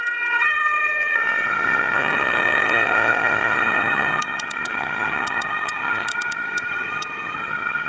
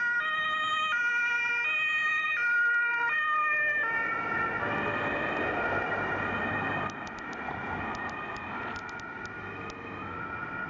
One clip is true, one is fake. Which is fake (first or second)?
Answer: first